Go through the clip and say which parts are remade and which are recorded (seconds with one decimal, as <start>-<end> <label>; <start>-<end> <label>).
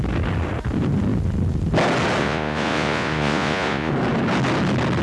0.0-2.2 recorded; 2.2-3.9 remade; 3.9-5.0 recorded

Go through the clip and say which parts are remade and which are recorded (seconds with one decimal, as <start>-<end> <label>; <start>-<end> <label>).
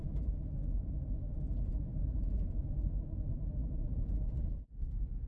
0.0-1.9 recorded; 1.9-5.3 remade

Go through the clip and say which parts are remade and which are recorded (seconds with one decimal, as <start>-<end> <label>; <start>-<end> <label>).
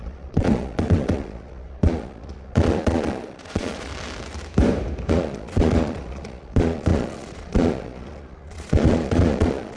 0.0-3.9 remade; 3.9-5.1 recorded; 5.1-9.8 remade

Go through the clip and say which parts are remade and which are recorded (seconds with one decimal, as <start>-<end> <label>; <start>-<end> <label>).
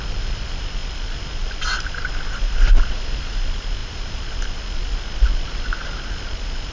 0.0-6.7 recorded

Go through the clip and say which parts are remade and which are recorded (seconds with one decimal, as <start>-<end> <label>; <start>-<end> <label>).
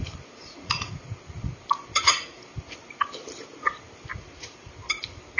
0.0-0.4 recorded; 0.4-0.9 remade; 0.9-1.9 recorded; 1.9-2.4 remade; 2.4-4.1 recorded; 4.1-4.7 remade; 4.7-5.4 recorded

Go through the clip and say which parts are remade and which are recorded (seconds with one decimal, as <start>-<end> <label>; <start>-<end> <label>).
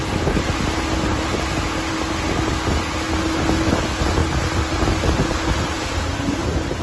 0.0-6.8 recorded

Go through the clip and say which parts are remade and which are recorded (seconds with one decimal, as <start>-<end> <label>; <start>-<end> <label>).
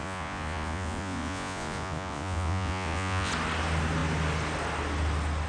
0.0-3.3 remade; 3.3-5.5 recorded